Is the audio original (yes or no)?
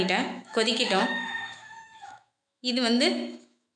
no